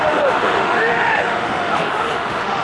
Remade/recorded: remade